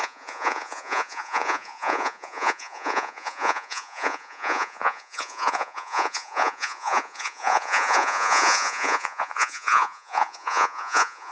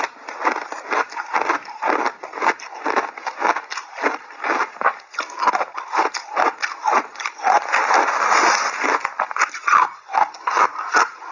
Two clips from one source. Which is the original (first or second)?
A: second